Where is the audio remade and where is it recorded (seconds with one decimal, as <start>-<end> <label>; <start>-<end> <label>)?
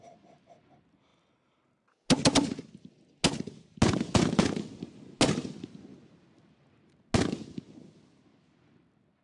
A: 0.0-9.2 recorded